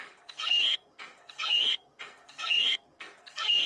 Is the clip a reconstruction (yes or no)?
yes